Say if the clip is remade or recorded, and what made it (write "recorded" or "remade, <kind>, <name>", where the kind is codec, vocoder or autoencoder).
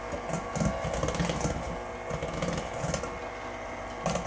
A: recorded